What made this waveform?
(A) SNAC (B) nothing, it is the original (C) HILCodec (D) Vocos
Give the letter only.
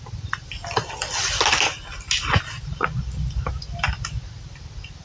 B